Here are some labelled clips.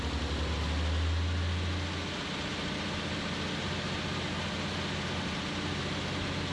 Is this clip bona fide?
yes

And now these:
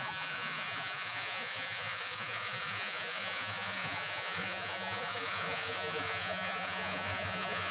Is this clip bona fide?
no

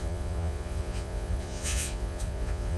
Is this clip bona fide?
no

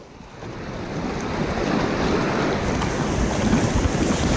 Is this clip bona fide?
yes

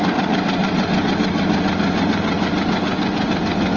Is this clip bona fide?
yes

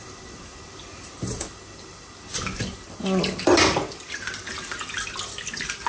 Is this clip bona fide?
yes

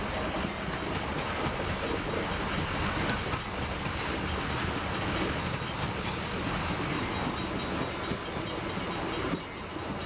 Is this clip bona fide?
yes